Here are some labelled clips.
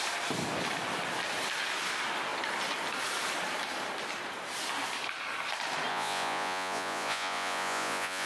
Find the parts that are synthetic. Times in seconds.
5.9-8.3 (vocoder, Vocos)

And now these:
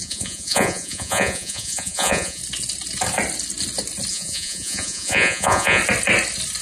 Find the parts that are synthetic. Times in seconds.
0.0-2.4 (vocoder, Vocos); 4.1-5.8

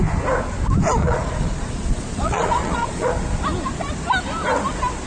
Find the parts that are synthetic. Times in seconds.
1.0-3.1 (vocoder, Vocos)

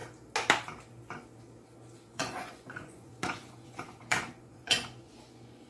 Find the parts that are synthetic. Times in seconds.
2.1-5.7 (vocoder, Vocos)

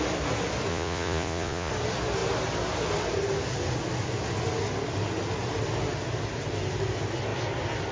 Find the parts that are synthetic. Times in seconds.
0.7-1.7 (vocoder, Vocos)

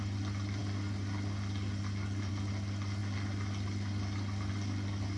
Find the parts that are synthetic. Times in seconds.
none